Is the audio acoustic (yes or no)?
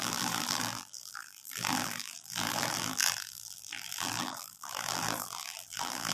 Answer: no